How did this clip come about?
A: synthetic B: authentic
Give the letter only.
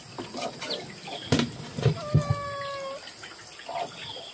B